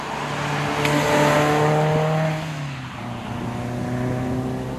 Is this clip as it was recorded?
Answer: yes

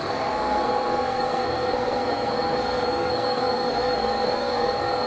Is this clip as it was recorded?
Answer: no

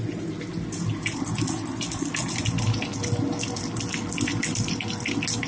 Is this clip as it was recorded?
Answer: yes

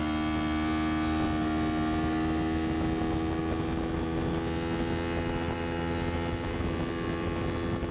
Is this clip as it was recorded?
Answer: yes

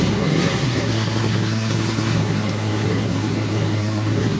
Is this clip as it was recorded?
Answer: no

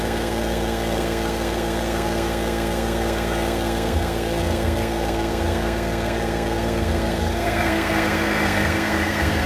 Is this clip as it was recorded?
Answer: no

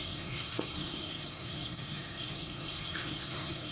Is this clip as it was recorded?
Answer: no